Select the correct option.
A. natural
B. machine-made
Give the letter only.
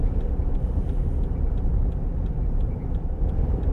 A